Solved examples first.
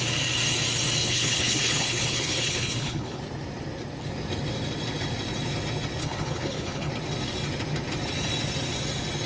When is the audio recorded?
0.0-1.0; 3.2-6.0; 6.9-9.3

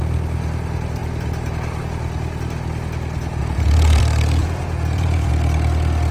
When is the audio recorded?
0.0-3.4; 4.0-4.4; 5.3-6.1

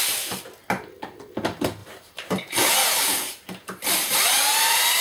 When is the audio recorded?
0.0-1.8

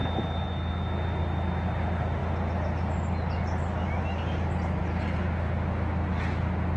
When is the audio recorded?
0.0-6.8

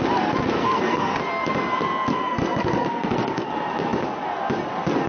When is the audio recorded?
0.0-0.6; 1.2-2.1; 3.5-5.1

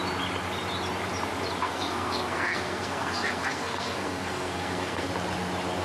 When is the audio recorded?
0.0-1.6; 5.1-5.8